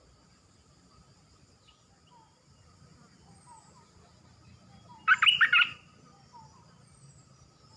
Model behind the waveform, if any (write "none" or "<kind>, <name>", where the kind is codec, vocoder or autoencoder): none